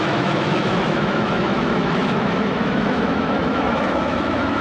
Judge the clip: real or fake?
fake